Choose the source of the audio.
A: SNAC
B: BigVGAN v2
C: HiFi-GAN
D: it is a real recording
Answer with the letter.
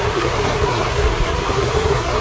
A